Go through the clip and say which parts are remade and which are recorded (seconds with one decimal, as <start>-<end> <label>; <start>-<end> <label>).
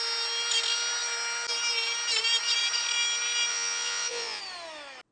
0.0-3.5 recorded; 3.5-4.4 remade; 4.4-5.1 recorded